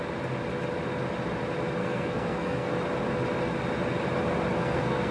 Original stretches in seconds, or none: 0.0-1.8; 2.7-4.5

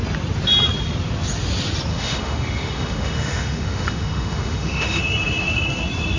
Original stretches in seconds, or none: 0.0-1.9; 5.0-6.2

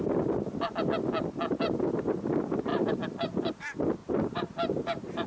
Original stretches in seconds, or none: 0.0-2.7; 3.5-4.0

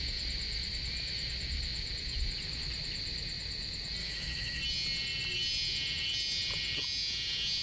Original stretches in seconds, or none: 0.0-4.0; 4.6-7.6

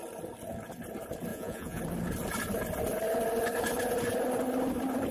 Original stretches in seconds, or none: 0.0-1.3; 1.8-5.1